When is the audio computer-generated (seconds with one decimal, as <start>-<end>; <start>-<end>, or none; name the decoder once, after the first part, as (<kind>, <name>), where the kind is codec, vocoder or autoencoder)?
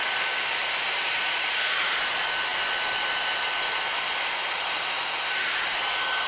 0.6-2.0 (vocoder, BigVGAN v2)